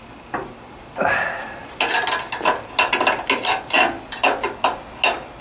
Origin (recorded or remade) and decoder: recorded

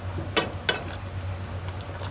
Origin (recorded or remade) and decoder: recorded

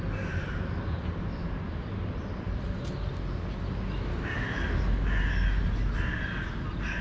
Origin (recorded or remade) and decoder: recorded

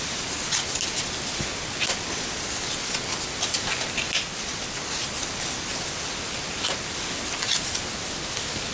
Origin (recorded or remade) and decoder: recorded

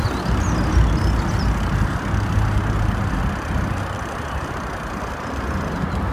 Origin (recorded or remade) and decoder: recorded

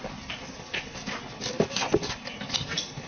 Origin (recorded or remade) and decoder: recorded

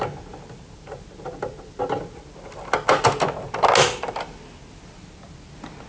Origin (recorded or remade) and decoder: recorded